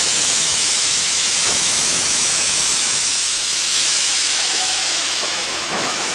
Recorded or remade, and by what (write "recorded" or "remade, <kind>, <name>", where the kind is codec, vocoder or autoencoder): remade, autoencoder, DAC-VAE